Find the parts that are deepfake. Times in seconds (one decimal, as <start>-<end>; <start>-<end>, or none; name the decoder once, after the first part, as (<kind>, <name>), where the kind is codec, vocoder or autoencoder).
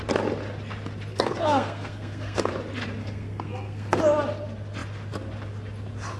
1.1-2.5 (codec, SNAC); 3.0-4.0